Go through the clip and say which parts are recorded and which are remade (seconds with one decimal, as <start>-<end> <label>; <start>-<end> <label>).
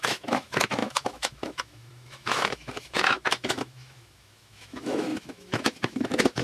0.0-6.4 remade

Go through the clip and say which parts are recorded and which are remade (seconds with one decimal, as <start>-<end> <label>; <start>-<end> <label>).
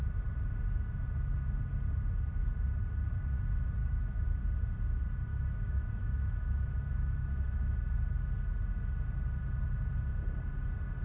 0.0-3.8 recorded; 3.8-4.4 remade; 4.4-5.3 recorded; 5.3-7.7 remade; 7.7-11.0 recorded